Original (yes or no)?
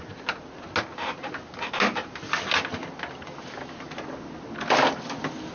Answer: yes